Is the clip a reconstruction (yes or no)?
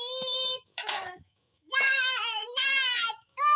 yes